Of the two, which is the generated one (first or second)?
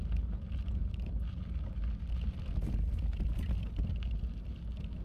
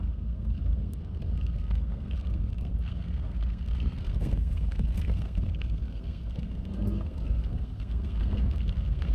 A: second